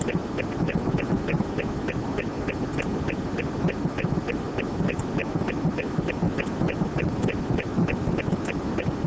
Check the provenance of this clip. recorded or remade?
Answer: recorded